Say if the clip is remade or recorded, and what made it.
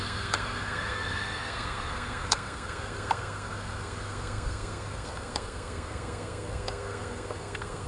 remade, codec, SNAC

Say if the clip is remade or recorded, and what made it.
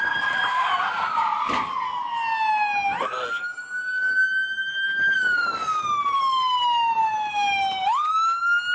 recorded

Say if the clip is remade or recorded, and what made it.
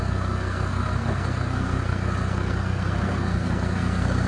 remade, codec, SNAC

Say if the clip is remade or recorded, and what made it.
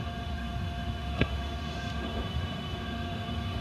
remade, autoencoder, DAC-VAE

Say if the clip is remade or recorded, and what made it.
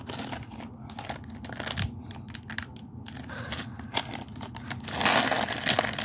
recorded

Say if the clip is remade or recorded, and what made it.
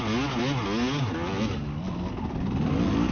recorded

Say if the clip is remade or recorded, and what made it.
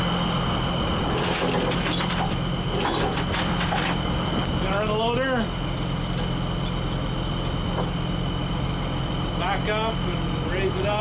recorded